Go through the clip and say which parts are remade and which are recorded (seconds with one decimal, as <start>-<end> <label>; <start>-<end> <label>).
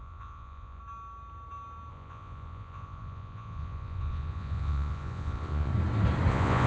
0.0-0.8 remade; 0.8-1.9 recorded; 1.9-5.7 remade; 5.7-6.3 recorded; 6.3-6.7 remade